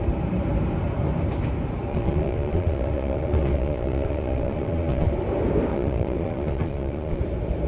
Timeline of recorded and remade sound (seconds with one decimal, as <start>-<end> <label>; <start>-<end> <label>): 0.0-1.9 recorded; 1.9-5.1 remade; 5.1-5.7 recorded; 5.7-7.2 remade; 7.2-7.7 recorded